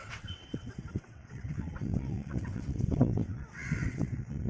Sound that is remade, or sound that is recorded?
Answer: remade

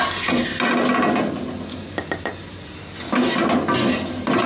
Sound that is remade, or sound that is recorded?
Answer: recorded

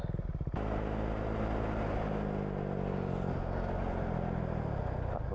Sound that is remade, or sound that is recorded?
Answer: recorded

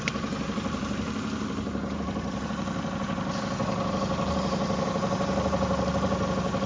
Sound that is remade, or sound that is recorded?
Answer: remade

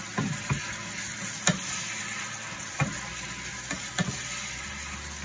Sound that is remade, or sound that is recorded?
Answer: recorded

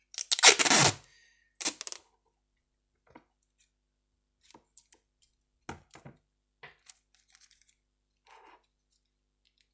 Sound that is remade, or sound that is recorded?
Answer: recorded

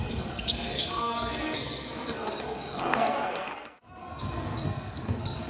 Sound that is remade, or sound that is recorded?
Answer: remade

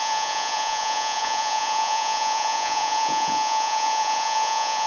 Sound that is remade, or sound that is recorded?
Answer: remade